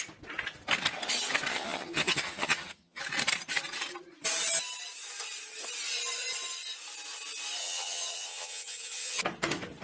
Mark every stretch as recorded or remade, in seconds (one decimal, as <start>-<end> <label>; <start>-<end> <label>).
0.0-1.5 recorded; 1.5-3.0 remade; 3.0-7.6 recorded; 7.6-9.2 remade; 9.2-9.8 recorded